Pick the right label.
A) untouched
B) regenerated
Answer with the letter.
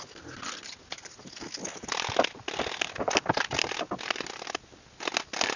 A